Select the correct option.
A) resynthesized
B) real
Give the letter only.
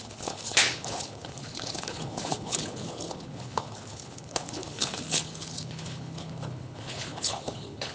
A